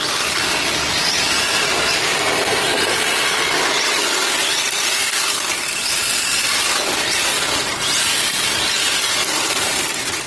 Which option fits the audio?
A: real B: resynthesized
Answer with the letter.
A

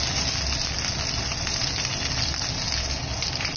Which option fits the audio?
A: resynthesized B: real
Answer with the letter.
B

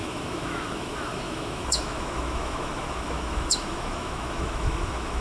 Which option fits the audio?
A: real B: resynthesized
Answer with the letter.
B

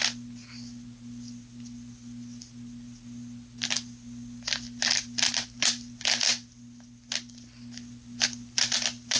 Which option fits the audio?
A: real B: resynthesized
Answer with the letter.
A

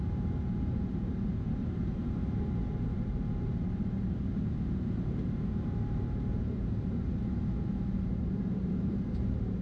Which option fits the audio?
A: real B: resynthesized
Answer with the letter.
B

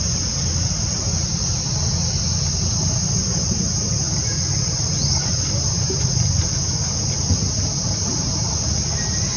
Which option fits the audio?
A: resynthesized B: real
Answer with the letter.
B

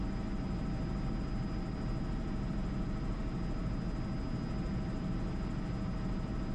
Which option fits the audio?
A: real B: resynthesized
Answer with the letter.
A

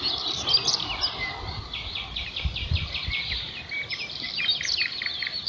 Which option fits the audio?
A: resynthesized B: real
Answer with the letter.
B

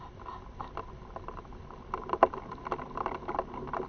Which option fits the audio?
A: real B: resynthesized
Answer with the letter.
A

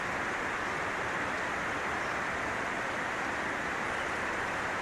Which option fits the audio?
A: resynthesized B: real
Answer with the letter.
B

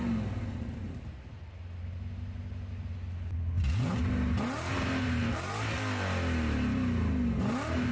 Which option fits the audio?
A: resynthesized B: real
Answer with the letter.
B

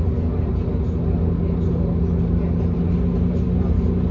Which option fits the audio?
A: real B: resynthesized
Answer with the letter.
A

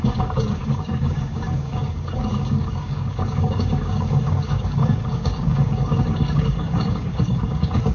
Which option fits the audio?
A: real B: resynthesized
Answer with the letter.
B